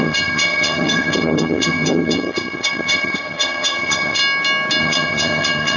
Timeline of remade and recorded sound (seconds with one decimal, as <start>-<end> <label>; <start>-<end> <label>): 0.0-4.2 remade; 4.2-4.8 recorded; 4.8-5.8 remade